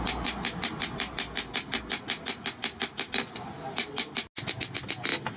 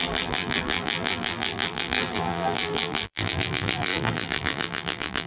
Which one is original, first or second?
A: first